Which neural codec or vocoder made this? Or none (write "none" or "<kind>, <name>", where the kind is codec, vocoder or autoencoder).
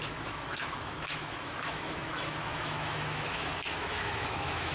autoencoder, DAC-VAE